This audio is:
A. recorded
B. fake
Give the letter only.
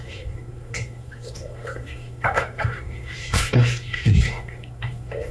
B